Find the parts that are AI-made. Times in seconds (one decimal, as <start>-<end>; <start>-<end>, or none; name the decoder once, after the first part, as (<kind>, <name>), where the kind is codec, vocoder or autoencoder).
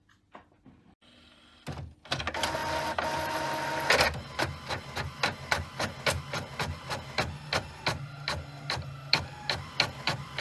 none